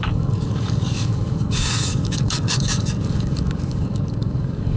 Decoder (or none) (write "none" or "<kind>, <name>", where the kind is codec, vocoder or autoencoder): codec, DAC